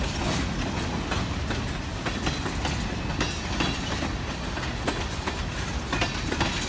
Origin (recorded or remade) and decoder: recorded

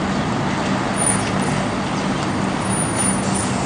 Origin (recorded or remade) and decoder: recorded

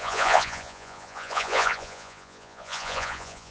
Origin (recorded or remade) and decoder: remade, vocoder, Vocos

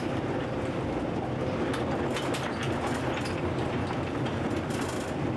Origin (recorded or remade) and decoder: recorded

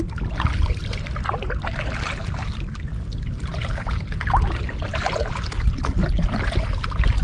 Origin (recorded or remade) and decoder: recorded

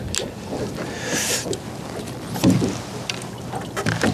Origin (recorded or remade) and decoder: recorded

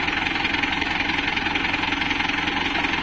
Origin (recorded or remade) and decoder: recorded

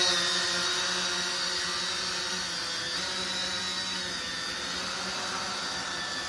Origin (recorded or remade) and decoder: recorded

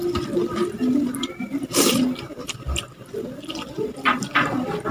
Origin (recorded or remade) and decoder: remade, vocoder, BigVGAN v2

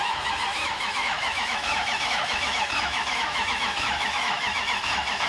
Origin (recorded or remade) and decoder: remade, autoencoder, DAC-VAE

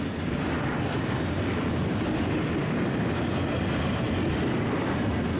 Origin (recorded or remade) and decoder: recorded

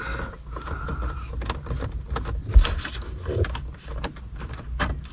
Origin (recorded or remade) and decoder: recorded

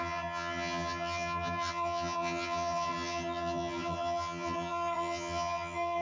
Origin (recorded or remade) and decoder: remade, vocoder, HiFi-GAN